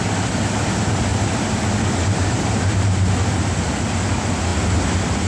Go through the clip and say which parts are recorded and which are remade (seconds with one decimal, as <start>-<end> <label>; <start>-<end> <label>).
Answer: 0.0-5.3 recorded